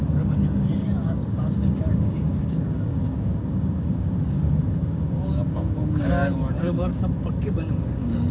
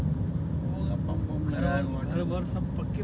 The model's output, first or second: first